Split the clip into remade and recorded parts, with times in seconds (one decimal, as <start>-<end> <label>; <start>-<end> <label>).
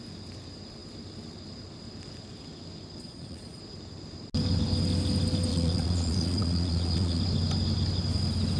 0.0-3.0 recorded; 3.0-3.6 remade; 3.6-5.5 recorded; 5.5-7.2 remade; 7.2-8.6 recorded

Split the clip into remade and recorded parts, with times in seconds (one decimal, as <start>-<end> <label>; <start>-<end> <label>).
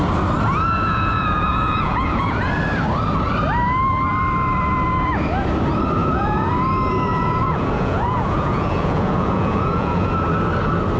0.0-0.8 recorded; 0.8-2.5 remade; 2.5-6.0 recorded; 6.0-6.5 remade; 6.5-7.1 recorded; 7.1-10.1 remade; 10.1-11.0 recorded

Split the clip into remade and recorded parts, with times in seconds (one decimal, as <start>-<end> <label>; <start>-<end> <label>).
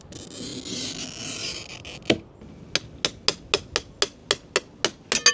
0.0-5.3 recorded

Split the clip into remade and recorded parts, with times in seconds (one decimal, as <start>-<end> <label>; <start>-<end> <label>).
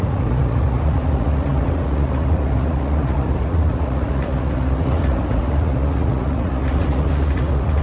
0.0-7.8 remade